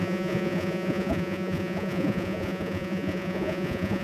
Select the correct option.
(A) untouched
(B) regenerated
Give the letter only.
B